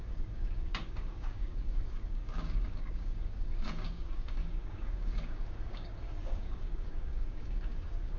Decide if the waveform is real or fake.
fake